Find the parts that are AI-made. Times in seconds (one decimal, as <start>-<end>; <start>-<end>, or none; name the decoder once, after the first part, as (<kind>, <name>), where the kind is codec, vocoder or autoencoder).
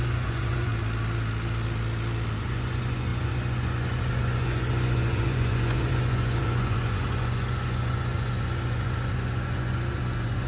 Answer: 0.0-0.7 (vocoder, Vocos); 2.4-10.5